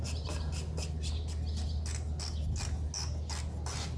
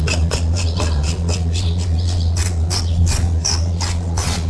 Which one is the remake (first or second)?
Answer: second